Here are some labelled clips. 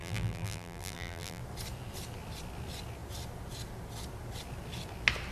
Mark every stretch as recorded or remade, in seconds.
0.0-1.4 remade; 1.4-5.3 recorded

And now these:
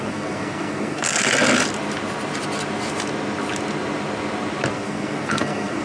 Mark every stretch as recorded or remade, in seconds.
0.0-1.2 remade; 1.2-4.7 recorded; 4.7-5.8 remade